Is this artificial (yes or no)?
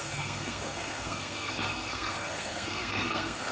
yes